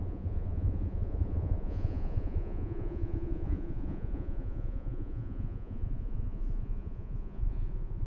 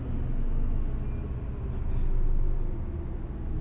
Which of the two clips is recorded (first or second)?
second